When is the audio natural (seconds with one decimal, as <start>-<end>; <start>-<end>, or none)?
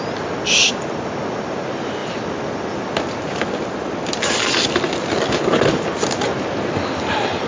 0.0-7.5